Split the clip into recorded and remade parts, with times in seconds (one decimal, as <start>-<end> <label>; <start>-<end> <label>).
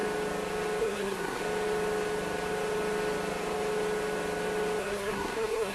0.0-0.8 recorded; 0.8-1.4 remade; 1.4-4.8 recorded; 4.8-5.7 remade